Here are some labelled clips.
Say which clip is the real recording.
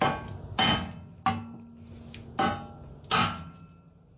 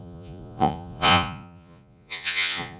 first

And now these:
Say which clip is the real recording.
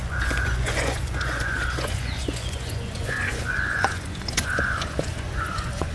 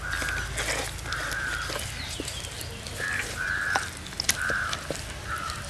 second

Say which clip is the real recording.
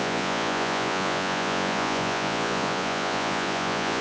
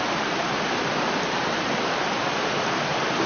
second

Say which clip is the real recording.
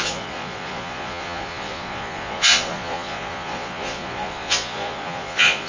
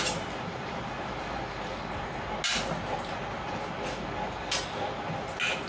second